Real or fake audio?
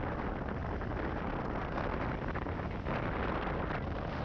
real